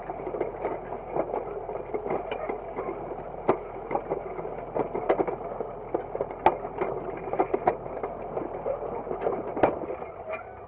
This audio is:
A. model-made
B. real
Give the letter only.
B